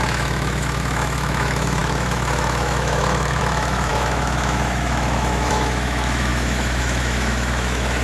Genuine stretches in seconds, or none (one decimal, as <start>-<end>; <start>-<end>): none

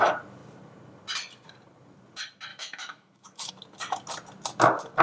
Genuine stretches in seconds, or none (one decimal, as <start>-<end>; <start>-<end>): 0.0-2.5; 3.5-5.0

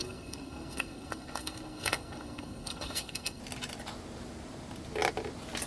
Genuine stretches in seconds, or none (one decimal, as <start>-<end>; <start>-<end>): 3.4-5.7

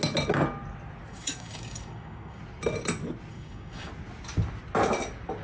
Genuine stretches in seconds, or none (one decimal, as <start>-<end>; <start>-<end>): 0.0-1.1; 2.4-3.3; 3.9-5.4

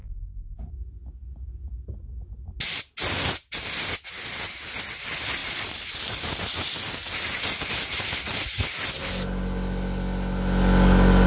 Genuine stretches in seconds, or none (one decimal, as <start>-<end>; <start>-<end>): 0.6-11.3

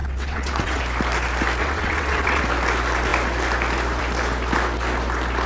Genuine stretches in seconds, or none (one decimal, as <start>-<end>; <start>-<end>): 0.8-1.6; 2.4-5.5